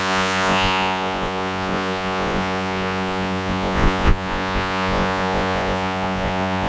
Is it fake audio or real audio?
fake